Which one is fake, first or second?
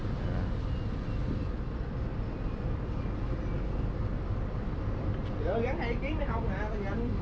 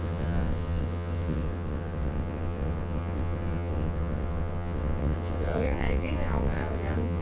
second